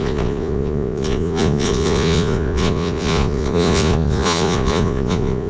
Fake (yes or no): yes